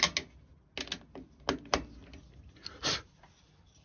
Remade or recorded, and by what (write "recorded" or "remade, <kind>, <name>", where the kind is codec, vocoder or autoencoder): recorded